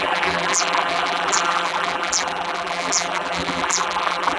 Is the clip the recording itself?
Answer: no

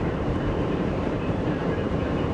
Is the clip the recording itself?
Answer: no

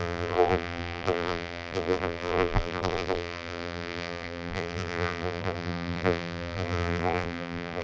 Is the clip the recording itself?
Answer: no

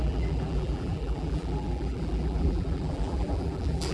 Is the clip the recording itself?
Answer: no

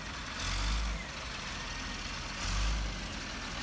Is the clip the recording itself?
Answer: yes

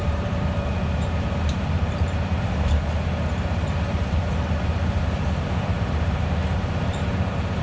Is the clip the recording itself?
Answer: no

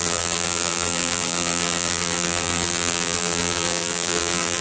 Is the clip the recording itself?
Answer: no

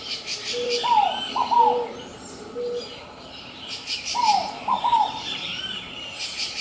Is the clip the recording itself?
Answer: no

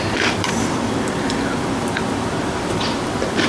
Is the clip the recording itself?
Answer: no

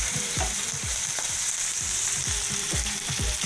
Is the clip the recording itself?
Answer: no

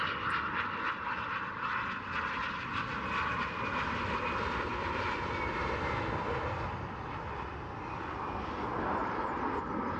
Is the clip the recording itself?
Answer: yes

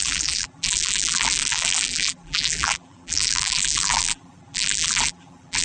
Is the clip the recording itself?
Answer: no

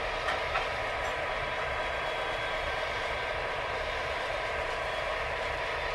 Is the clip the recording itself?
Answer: no